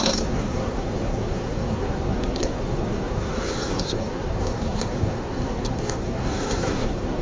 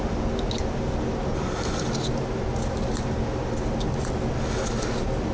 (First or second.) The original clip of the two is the second